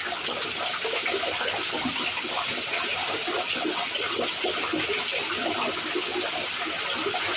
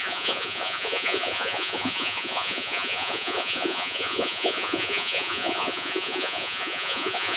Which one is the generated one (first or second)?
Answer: second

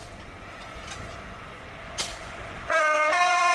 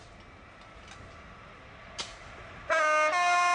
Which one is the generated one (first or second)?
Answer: first